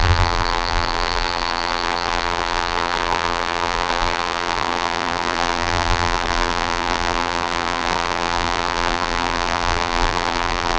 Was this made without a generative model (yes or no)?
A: no